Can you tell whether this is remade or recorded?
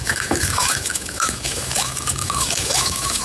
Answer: remade